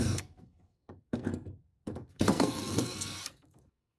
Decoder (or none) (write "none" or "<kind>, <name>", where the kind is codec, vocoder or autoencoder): codec, SNAC